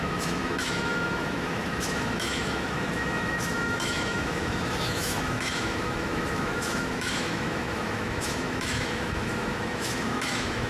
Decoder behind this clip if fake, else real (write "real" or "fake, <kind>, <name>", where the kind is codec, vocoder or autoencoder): fake, autoencoder, DAC-VAE